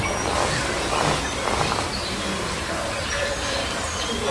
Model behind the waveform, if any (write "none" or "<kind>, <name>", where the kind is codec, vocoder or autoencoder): none